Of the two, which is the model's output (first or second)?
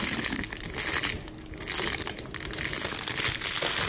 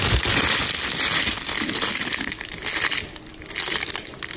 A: second